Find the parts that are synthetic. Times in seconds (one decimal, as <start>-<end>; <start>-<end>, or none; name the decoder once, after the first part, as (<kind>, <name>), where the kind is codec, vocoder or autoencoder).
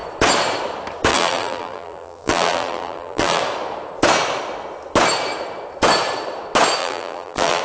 1.1-3.4 (vocoder, BigVGAN v2); 6.8-7.6